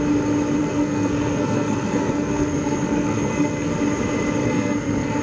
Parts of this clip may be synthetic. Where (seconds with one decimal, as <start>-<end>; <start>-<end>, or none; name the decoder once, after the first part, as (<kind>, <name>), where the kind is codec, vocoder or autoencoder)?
0.6-3.7 (codec, SNAC); 4.4-5.2